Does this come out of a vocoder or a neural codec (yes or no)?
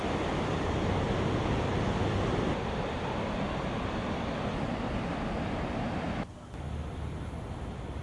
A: no